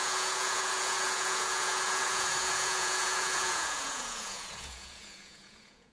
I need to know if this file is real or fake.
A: fake